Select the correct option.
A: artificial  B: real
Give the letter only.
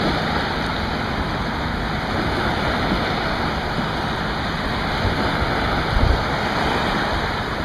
B